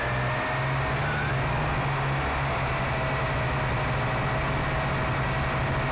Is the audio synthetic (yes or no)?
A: no